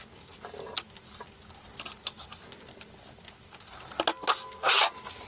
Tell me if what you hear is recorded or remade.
recorded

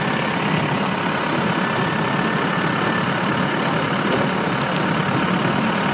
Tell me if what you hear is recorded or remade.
recorded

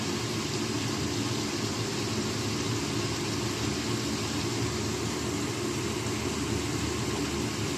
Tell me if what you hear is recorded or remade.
recorded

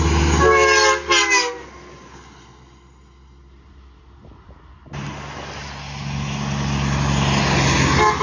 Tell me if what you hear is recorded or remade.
recorded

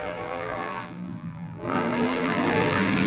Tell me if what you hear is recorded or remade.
remade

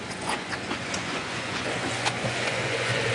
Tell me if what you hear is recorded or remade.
remade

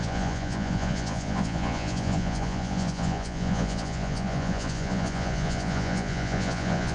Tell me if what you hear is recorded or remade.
remade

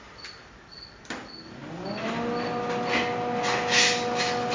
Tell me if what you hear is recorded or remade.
recorded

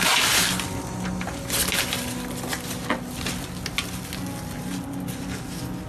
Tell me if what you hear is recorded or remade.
recorded